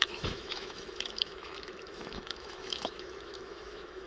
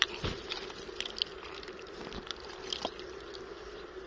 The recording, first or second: second